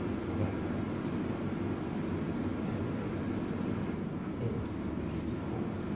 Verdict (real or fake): real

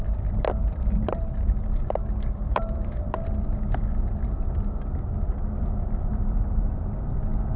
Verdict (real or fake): fake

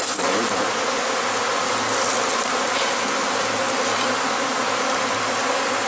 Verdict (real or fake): real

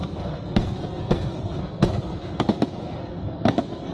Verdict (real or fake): fake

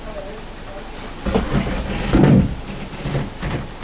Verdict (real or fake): real